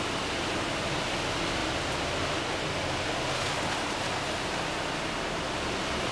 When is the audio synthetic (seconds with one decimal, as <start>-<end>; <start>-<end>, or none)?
1.6-2.3